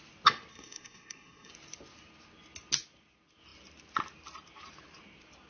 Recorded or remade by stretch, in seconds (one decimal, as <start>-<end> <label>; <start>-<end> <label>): 0.0-0.5 recorded; 0.5-1.5 remade; 1.5-5.5 recorded